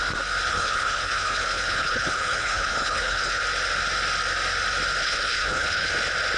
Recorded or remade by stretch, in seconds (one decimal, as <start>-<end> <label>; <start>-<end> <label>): 0.0-0.5 recorded; 0.5-3.4 remade; 3.4-5.0 recorded; 5.0-5.9 remade; 5.9-6.4 recorded